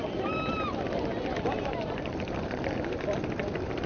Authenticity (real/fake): real